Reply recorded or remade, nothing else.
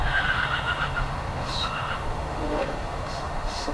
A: remade